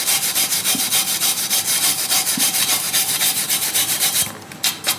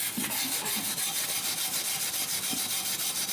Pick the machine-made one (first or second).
first